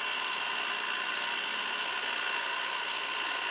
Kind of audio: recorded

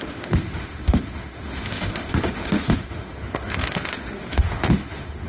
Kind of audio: remade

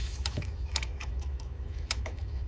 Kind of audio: remade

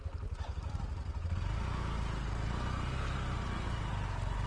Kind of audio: recorded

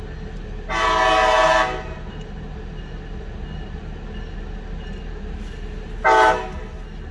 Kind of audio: recorded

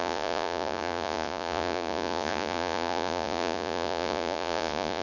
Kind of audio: remade